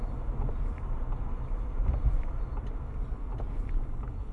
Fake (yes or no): no